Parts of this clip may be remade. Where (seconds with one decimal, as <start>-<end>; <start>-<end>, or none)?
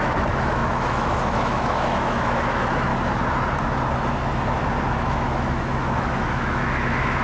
0.0-2.9; 4.9-7.2